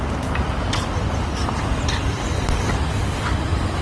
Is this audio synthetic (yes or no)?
no